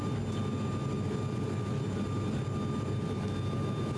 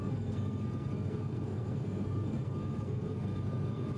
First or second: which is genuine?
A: first